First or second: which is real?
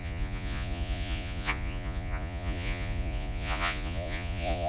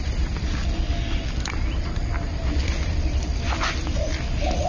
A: second